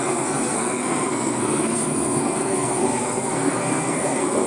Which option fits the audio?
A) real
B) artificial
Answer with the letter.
B